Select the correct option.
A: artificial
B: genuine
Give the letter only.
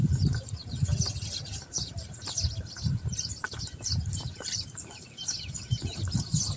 A